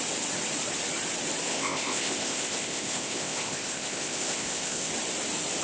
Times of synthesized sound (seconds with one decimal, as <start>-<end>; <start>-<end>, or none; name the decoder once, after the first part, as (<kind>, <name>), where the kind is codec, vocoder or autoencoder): 1.5-4.9 (codec, ZipCodec)